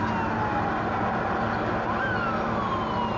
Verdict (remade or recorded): recorded